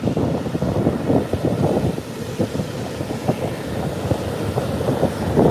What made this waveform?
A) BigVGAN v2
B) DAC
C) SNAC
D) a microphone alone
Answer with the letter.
D